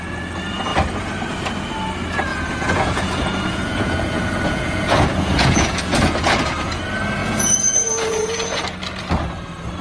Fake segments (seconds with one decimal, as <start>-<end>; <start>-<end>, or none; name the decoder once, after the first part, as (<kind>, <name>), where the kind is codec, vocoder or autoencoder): 2.3-6.8 (vocoder, Vocos); 7.2-8.6